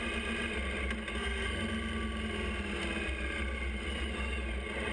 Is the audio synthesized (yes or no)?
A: no